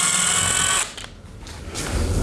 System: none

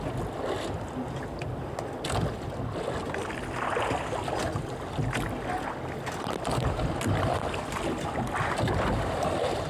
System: none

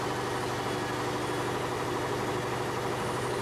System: none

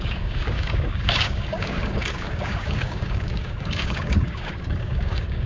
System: codec, DAC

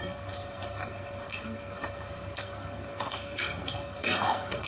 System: codec, SNAC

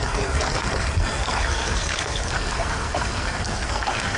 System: codec, SNAC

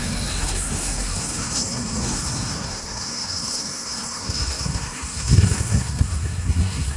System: codec, SNAC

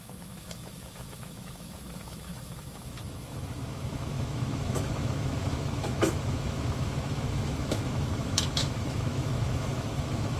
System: autoencoder, DAC-VAE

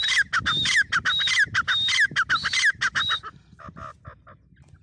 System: none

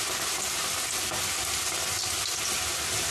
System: none